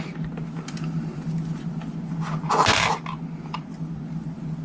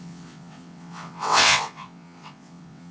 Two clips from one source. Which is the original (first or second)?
first